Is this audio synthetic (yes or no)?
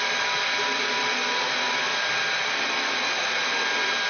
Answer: no